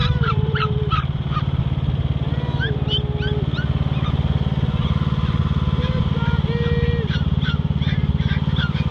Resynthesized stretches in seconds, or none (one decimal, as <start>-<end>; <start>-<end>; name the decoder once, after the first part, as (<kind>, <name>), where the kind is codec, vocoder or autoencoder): 0.0-1.6 (vocoder, BigVGAN v2)